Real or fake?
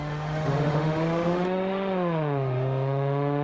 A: fake